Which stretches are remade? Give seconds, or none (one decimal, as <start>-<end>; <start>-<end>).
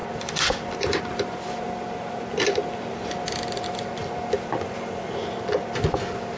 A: none